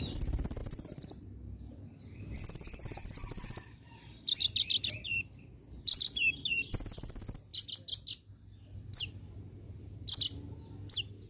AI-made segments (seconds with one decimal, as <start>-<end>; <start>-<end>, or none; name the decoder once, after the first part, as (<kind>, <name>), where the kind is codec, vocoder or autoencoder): 0.6-2.2 (vocoder, BigVGAN v2)